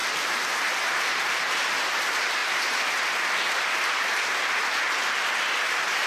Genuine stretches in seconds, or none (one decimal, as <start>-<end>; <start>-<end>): 0.0-2.4; 3.0-5.0